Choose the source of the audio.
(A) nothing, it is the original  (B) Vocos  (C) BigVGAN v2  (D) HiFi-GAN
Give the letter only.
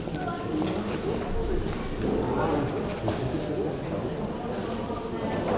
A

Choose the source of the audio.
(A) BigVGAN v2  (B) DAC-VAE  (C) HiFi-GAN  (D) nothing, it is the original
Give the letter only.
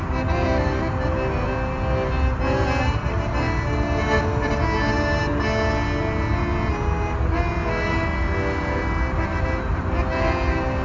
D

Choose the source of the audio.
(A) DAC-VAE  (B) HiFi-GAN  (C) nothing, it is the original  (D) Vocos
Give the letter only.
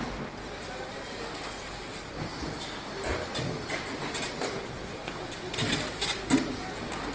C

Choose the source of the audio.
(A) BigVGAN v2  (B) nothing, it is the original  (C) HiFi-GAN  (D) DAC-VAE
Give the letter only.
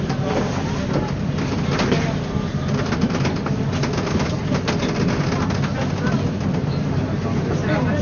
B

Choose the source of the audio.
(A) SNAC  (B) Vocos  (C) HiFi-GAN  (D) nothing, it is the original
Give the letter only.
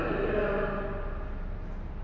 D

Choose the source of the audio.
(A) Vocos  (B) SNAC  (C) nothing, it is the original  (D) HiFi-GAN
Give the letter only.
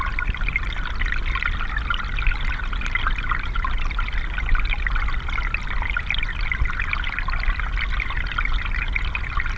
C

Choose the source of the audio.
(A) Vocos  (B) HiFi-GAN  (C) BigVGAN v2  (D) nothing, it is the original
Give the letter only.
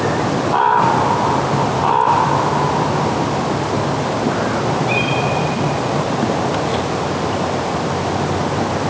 D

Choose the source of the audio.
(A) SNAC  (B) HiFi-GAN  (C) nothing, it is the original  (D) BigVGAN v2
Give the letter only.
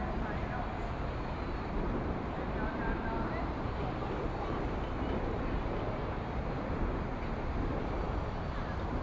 C